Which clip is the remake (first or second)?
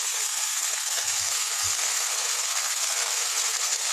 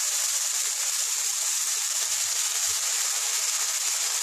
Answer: first